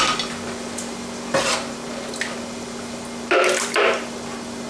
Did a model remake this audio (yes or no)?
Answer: no